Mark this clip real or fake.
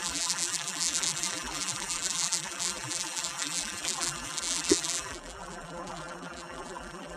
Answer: fake